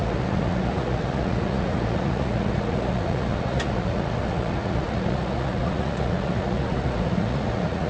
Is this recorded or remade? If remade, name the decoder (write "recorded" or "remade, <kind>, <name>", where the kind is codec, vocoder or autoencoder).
remade, vocoder, Vocos